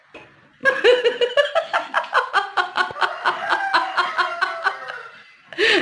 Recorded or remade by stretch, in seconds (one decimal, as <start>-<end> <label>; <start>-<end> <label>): 0.0-5.8 recorded